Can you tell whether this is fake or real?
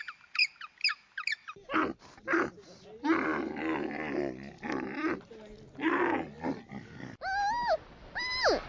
real